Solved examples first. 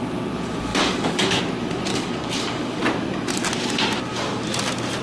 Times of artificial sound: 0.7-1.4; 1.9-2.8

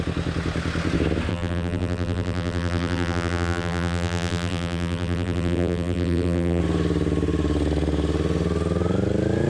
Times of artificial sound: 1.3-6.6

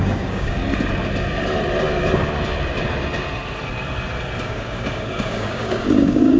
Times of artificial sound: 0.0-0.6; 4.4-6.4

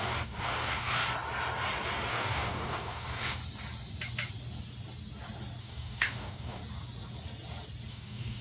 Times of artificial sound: 0.0-1.0; 2.1-3.4; 5.6-6.6; 7.9-8.4